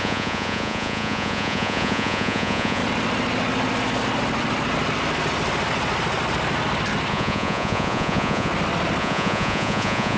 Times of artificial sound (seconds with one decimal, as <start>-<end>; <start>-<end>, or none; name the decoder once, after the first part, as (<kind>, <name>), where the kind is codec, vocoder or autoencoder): 0.0-2.8 (vocoder, Vocos); 7.1-8.5; 9.0-10.2